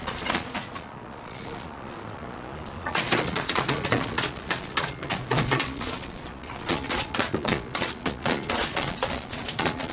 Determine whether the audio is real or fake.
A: fake